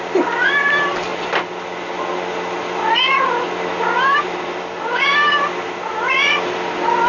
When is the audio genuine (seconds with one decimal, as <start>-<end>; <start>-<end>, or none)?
0.0-7.1